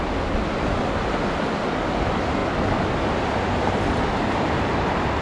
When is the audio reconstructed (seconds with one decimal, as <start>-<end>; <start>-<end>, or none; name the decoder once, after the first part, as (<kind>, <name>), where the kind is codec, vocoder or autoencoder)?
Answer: none